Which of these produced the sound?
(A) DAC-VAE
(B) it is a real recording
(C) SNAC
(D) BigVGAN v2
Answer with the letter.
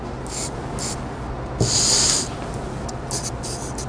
B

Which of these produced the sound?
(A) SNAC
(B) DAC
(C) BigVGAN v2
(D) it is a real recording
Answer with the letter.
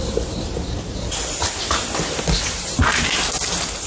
D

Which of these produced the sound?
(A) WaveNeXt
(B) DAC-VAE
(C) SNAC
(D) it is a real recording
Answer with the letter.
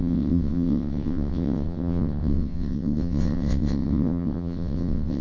A